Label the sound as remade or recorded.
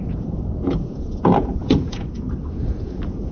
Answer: remade